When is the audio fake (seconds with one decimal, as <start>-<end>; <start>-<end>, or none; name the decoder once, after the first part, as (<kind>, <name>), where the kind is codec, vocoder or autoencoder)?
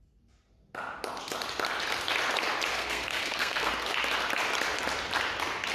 2.7-3.7 (codec, SNAC)